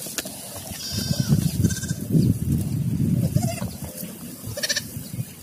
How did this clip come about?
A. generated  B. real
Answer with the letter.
B